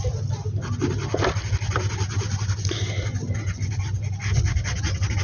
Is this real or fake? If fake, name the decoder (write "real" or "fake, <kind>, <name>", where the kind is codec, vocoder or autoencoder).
real